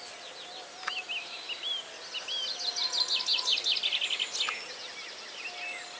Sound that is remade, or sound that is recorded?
recorded